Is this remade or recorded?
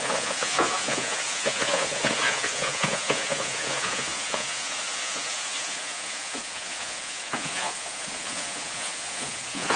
remade